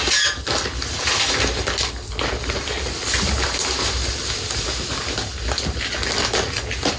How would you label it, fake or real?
real